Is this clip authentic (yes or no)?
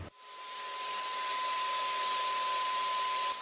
yes